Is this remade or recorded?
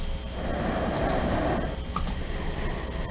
recorded